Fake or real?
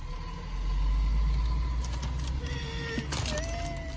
real